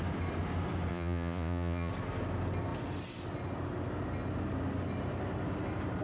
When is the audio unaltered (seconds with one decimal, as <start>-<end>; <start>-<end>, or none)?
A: 0.0-0.9; 1.9-6.0